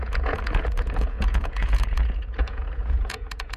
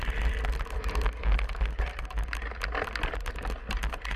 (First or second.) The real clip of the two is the second